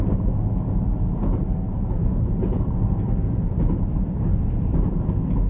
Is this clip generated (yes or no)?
no